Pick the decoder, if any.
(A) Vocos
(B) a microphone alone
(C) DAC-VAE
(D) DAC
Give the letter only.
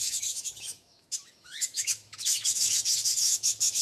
C